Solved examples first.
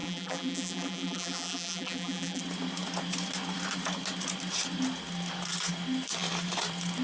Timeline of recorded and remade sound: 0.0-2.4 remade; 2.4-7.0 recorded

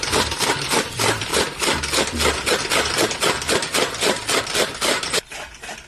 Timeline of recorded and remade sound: 0.0-1.3 remade; 1.3-4.4 recorded; 4.4-5.9 remade

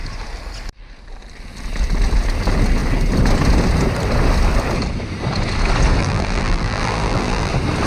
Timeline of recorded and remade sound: 0.0-6.0 recorded; 6.0-7.5 remade; 7.5-7.9 recorded